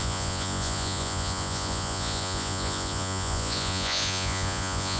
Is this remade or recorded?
remade